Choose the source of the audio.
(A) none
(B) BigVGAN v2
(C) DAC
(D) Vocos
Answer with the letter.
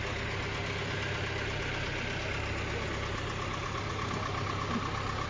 A